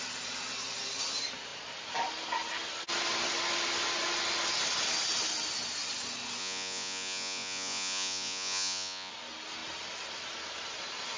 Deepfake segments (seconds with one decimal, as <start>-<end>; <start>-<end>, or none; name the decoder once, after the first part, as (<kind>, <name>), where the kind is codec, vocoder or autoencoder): 6.4-9.1 (vocoder, Vocos)